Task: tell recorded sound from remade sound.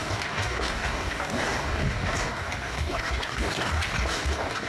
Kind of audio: remade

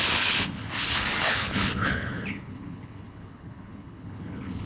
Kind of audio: remade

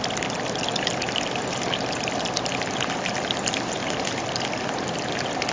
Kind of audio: remade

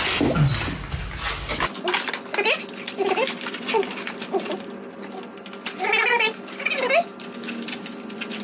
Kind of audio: recorded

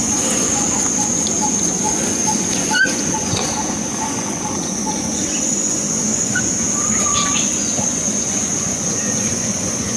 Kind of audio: remade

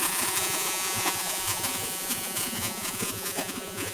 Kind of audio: remade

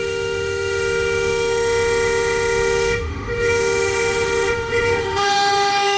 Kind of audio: remade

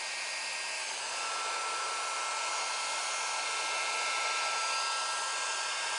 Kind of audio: recorded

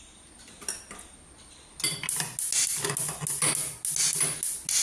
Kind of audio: recorded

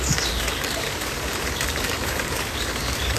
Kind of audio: remade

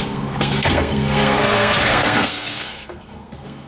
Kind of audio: remade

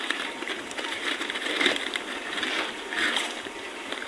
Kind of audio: remade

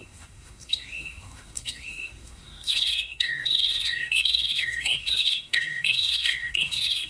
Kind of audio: remade